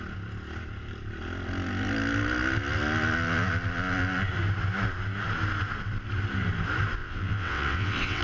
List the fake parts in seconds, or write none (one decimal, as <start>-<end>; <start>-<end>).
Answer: 7.0-8.2